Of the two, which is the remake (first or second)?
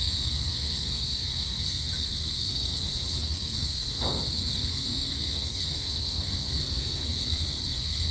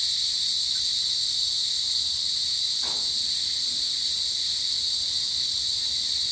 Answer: first